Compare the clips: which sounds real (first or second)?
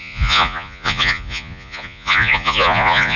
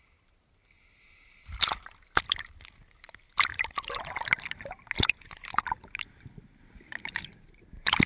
second